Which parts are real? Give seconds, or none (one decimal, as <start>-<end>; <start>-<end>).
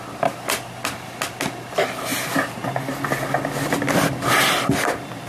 0.0-5.3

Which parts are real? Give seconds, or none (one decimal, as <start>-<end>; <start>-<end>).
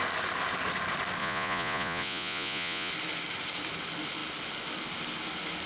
0.0-1.2; 2.9-5.7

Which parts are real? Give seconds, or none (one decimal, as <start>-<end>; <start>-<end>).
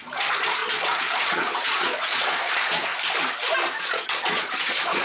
2.9-3.8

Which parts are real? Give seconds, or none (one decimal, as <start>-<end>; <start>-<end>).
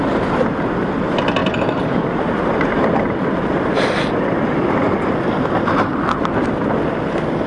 0.0-7.5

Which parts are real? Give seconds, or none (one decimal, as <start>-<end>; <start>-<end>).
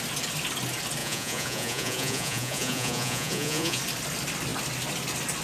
0.0-1.0; 3.8-5.4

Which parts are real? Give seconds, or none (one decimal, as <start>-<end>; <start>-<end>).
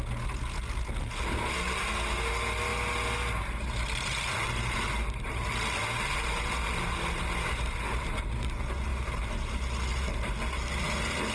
0.0-11.3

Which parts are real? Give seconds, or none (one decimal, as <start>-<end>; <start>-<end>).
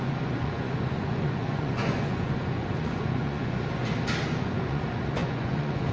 3.8-4.4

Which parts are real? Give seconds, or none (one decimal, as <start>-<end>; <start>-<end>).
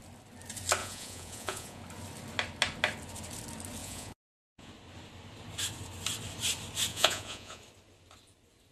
0.0-0.8; 1.8-3.8; 4.7-6.9; 7.6-8.7